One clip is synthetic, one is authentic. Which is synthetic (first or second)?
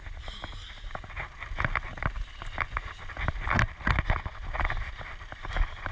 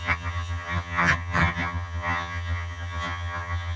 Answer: second